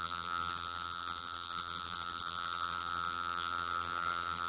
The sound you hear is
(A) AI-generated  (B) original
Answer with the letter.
A